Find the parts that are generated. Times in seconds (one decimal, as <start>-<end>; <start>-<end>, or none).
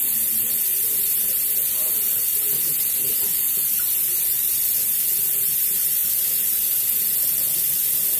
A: 0.7-1.5